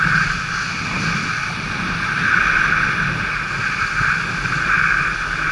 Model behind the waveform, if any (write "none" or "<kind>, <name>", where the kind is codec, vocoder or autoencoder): none